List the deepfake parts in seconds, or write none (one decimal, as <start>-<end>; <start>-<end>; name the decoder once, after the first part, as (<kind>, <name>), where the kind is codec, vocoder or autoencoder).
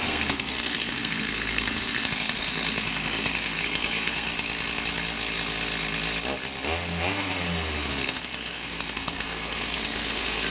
0.0-4.3 (codec, SNAC); 7.9-10.5